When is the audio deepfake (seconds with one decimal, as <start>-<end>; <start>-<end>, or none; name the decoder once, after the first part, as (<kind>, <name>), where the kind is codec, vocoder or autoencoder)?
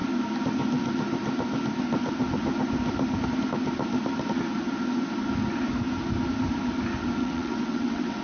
7.2-8.2 (vocoder, WaveNeXt)